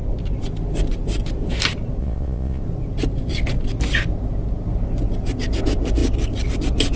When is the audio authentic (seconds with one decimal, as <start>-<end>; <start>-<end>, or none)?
0.0-2.0; 2.6-7.0